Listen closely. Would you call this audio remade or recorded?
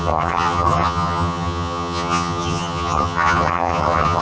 remade